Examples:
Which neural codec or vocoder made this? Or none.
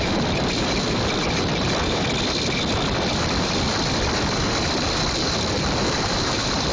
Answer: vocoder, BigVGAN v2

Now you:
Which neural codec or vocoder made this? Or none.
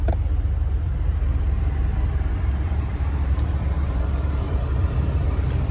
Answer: vocoder, BigVGAN v2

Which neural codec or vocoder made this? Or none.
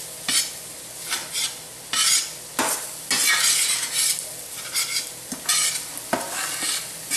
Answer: none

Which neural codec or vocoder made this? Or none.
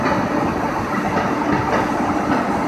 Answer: none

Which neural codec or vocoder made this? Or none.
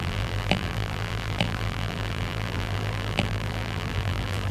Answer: vocoder, BigVGAN v2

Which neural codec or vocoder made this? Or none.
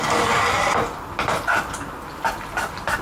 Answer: vocoder, BigVGAN v2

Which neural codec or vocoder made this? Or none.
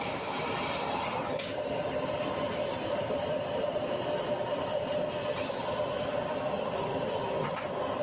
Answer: vocoder, BigVGAN v2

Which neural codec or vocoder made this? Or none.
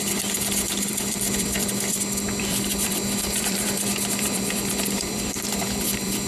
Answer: vocoder, BigVGAN v2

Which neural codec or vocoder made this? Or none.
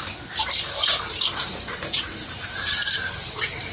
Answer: vocoder, BigVGAN v2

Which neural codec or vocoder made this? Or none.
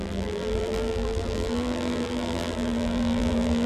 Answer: vocoder, BigVGAN v2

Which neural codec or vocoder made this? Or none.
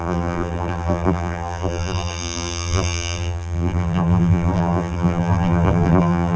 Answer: vocoder, BigVGAN v2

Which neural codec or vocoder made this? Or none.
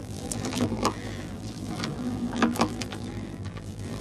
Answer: vocoder, BigVGAN v2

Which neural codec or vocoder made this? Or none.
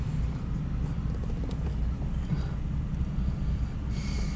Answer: none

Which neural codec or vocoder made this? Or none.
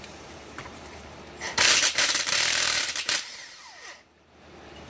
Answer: vocoder, BigVGAN v2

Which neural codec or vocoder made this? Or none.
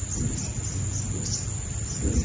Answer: none